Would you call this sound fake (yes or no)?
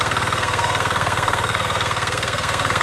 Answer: yes